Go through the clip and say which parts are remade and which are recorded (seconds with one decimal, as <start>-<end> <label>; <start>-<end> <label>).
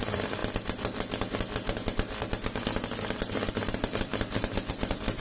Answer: 0.0-0.4 remade; 0.4-3.5 recorded; 3.5-4.1 remade; 4.1-4.7 recorded; 4.7-5.2 remade